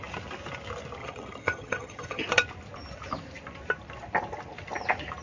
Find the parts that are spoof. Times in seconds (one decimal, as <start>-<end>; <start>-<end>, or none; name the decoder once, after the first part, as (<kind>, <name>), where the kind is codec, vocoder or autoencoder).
1.0-2.2 (vocoder, HiFi-GAN)